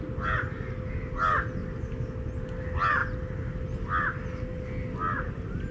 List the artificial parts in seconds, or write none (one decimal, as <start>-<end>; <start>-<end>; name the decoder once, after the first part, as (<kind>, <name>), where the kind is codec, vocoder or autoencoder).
none